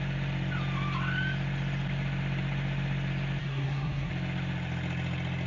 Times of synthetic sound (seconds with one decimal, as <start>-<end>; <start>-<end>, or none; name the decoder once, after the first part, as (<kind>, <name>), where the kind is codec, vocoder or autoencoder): 3.4-4.1 (codec, SNAC)